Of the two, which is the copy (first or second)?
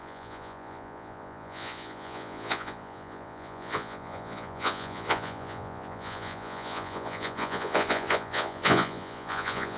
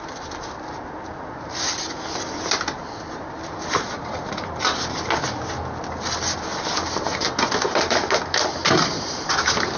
first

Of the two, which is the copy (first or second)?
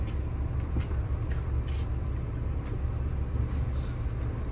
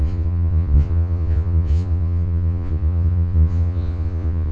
second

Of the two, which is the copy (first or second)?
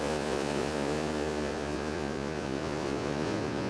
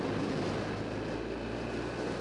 first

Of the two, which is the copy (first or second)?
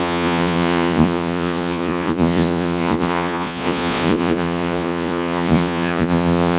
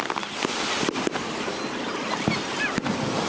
first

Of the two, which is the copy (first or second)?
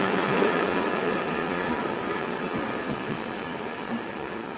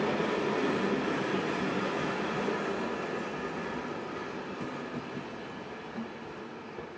first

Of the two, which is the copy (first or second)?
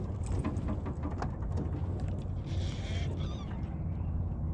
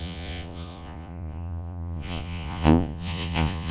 second